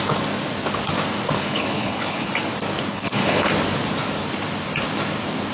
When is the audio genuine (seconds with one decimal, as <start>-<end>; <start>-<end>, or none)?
0.0-1.4; 2.3-2.9; 3.5-5.5